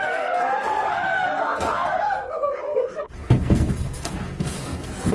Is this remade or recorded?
remade